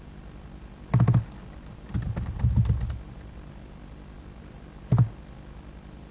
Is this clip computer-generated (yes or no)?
no